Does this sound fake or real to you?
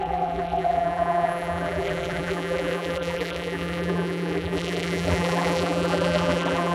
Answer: fake